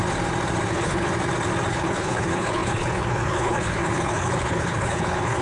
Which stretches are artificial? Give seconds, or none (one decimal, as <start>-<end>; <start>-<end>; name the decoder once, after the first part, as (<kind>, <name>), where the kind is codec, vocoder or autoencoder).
0.7-1.1 (codec, HILCodec); 1.7-5.4